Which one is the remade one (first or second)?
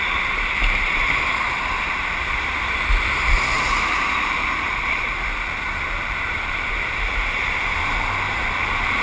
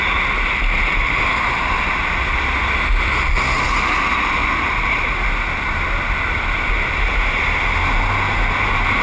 first